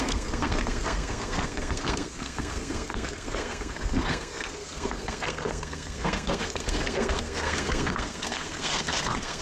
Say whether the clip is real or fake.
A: fake